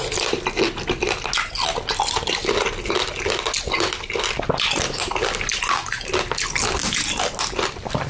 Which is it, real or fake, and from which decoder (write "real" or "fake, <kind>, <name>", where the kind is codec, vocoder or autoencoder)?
real